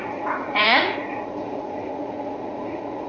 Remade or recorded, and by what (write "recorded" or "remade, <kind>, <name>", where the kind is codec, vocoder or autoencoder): remade, vocoder, Vocos